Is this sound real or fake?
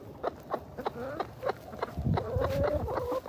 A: real